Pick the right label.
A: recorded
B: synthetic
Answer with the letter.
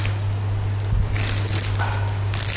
A